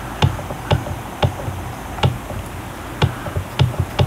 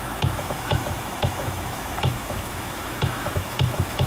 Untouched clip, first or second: first